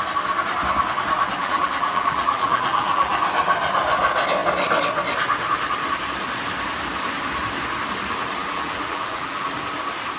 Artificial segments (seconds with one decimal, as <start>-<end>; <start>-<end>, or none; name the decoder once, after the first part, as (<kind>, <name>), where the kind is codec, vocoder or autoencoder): 1.4-3.2 (vocoder, BigVGAN v2); 8.4-9.5